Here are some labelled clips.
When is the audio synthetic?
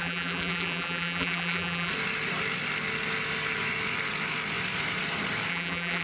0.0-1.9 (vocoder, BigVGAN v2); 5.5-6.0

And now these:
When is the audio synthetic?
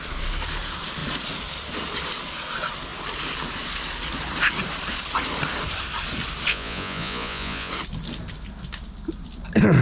6.5-7.7 (vocoder, Vocos)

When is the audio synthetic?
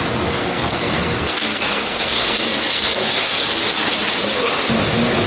0.4-3.6 (codec, SNAC)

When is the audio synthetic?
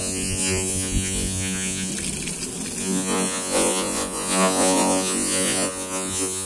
0.0-1.9 (vocoder, Vocos); 2.8-6.5